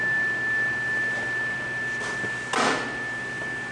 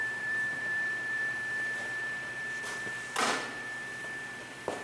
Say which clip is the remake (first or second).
second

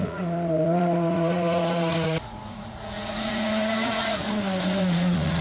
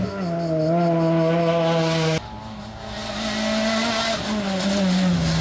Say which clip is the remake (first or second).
first